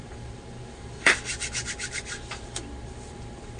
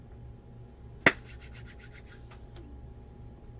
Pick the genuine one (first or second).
second